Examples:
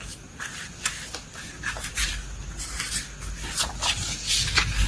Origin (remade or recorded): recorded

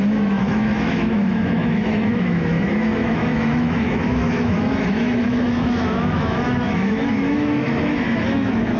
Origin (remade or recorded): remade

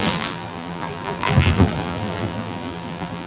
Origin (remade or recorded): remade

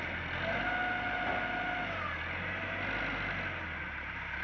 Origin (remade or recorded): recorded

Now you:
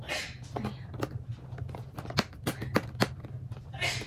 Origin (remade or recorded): recorded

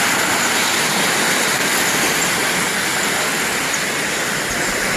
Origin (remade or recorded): recorded